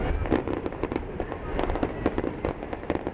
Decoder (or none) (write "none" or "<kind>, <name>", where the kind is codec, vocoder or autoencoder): none